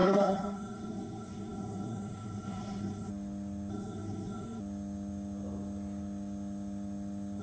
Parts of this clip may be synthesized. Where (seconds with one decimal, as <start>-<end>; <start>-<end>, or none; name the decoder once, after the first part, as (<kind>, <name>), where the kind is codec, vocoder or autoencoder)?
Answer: 0.0-3.1 (codec, SNAC); 3.7-4.6